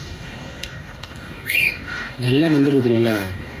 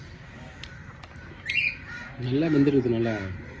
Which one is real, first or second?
second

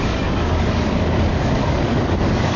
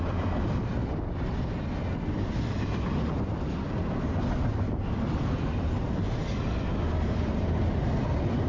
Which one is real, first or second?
second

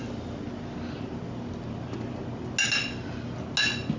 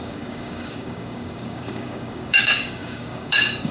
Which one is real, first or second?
first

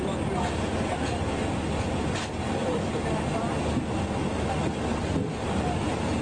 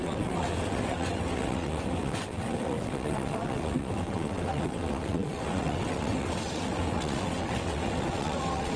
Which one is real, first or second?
first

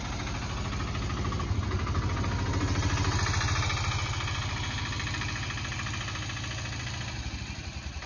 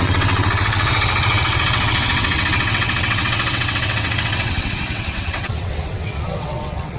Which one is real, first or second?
first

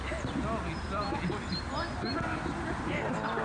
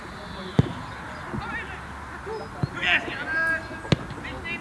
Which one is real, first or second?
second